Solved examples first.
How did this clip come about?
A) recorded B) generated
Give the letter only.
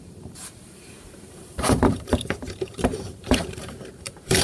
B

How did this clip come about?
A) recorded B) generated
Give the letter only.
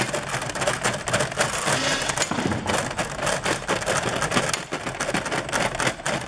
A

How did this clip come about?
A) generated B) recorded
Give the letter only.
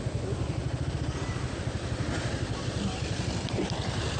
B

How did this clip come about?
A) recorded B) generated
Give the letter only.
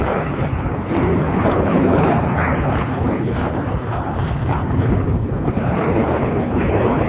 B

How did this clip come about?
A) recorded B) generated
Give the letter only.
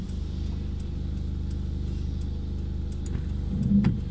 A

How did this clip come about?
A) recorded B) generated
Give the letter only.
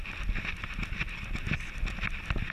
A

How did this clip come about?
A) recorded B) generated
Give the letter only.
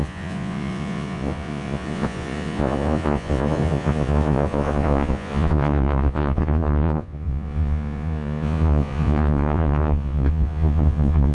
B